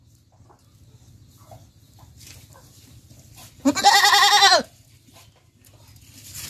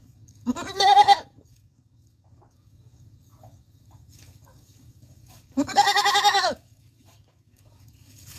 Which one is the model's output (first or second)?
second